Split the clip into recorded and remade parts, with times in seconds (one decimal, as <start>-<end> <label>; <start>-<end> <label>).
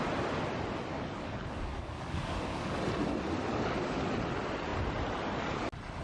0.0-0.9 recorded; 0.9-2.8 remade; 2.8-3.5 recorded; 3.5-4.1 remade; 4.1-6.0 recorded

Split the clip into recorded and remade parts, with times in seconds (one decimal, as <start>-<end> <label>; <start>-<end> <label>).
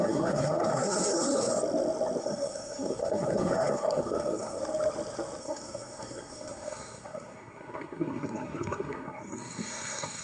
0.0-1.5 remade; 1.5-2.2 recorded; 2.2-4.6 remade; 4.6-5.4 recorded; 5.4-10.2 remade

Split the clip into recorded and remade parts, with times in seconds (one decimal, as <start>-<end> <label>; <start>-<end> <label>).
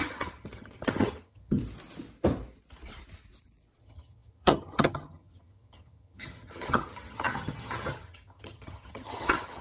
0.0-1.6 remade; 1.6-3.8 recorded; 3.8-9.6 remade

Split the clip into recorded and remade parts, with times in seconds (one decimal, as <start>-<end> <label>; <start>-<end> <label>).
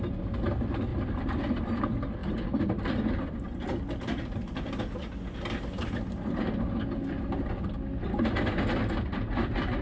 0.0-0.9 recorded; 0.9-1.4 remade; 1.4-2.2 recorded; 2.2-4.8 remade; 4.8-9.8 recorded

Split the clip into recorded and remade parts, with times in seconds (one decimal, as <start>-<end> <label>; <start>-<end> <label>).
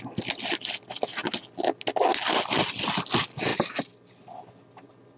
0.0-5.2 recorded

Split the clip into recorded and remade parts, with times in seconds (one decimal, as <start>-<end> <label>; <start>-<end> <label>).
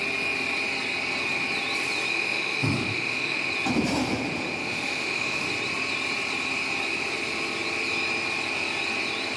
0.0-2.1 recorded; 2.1-3.5 remade; 3.5-4.6 recorded; 4.6-5.5 remade; 5.5-9.4 recorded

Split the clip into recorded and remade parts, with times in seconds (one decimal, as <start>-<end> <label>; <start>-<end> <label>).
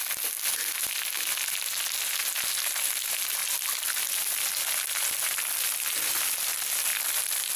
0.0-7.6 recorded